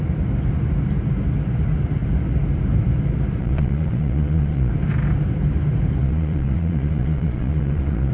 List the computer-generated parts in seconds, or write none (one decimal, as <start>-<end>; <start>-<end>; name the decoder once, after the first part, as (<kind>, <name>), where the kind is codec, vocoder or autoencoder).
3.4-4.7 (vocoder, Vocos); 6.0-8.1